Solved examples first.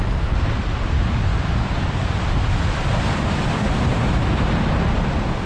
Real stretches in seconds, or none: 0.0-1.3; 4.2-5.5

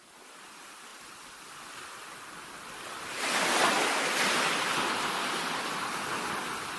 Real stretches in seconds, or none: 0.0-6.8

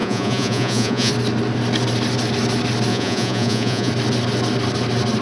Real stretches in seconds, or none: 1.1-2.9; 3.9-5.2

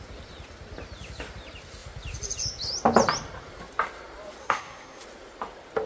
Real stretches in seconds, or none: 0.0-4.4; 5.0-5.9